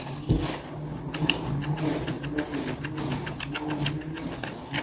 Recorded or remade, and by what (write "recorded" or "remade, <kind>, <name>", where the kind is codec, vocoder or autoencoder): recorded